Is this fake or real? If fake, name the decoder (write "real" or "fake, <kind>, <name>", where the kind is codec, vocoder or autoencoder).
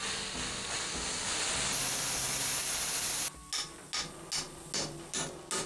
real